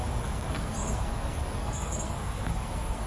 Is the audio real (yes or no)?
no